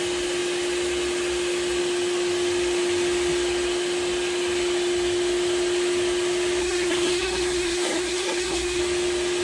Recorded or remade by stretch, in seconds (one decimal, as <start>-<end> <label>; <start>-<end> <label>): 0.0-6.6 recorded; 6.6-8.8 remade; 8.8-9.4 recorded